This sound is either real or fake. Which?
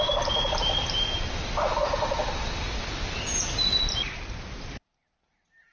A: real